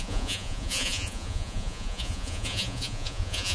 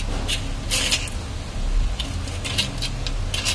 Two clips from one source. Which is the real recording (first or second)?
second